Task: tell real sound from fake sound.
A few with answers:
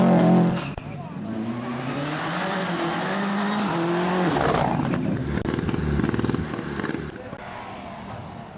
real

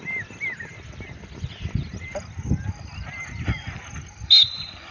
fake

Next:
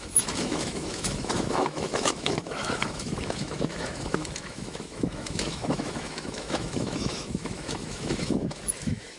fake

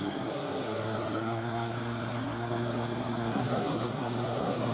fake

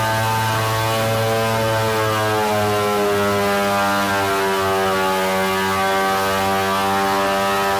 real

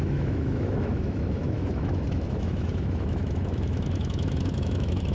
fake